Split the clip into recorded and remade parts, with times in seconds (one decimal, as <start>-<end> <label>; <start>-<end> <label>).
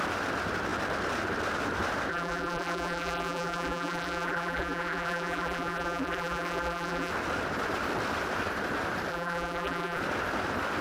0.0-2.1 recorded; 2.1-7.1 remade; 7.1-9.1 recorded; 9.1-10.0 remade; 10.0-10.8 recorded